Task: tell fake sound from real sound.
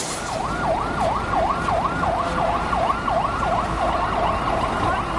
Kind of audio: real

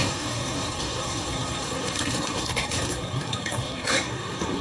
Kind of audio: fake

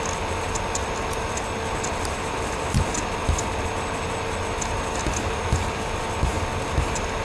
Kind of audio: real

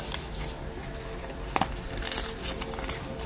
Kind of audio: real